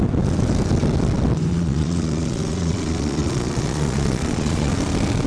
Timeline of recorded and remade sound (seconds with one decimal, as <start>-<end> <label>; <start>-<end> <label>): 0.0-1.5 recorded; 1.5-4.7 remade; 4.7-5.3 recorded